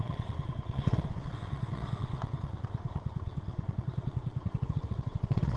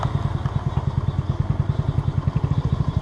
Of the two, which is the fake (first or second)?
first